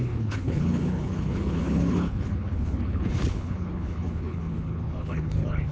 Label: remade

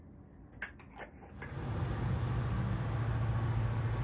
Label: recorded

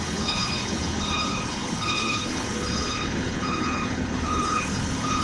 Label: remade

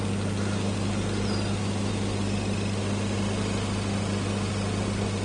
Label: recorded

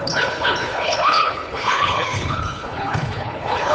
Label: remade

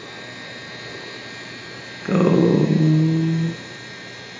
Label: recorded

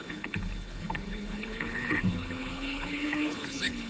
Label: remade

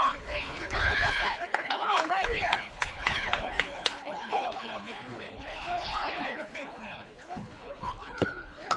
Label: remade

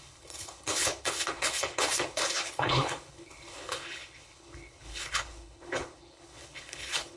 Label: remade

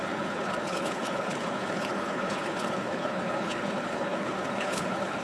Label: remade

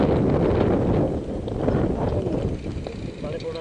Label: recorded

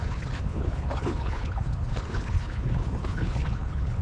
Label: remade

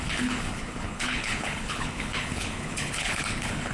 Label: remade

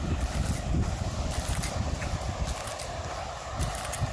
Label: recorded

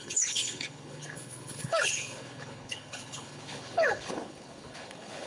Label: remade